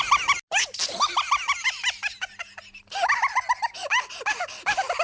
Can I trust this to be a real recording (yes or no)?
yes